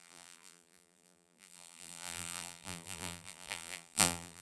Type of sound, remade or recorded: remade